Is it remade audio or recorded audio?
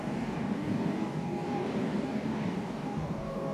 remade